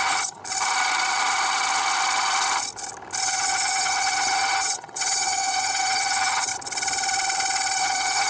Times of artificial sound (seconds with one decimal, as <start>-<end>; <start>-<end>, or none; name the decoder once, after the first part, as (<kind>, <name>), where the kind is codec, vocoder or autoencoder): 0.0-0.4 (vocoder, HiFi-GAN); 3.2-6.5; 7.8-8.3